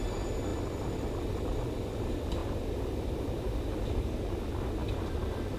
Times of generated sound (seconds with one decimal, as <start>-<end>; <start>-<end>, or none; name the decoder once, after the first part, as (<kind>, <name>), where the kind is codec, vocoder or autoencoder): none